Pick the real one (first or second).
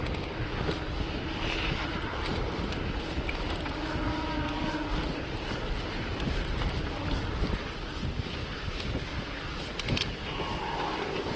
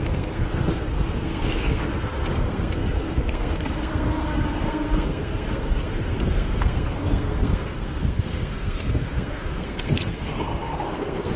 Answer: first